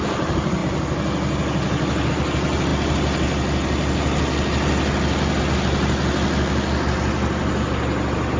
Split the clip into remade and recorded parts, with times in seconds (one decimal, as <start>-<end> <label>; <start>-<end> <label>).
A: 0.0-8.4 recorded